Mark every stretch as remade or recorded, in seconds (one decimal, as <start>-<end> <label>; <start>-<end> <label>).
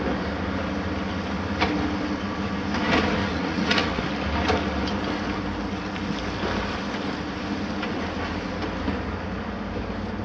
0.0-3.2 recorded; 3.2-4.0 remade; 4.0-10.2 recorded